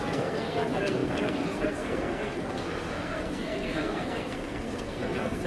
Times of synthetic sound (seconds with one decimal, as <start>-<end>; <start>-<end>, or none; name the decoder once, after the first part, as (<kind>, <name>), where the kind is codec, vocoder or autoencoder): 0.0-5.5 (codec, SNAC)